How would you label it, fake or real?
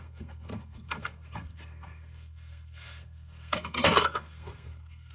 fake